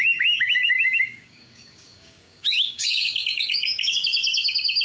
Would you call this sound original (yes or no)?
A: no